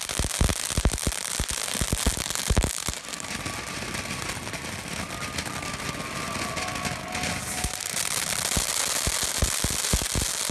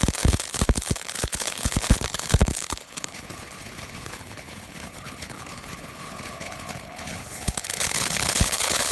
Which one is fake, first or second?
second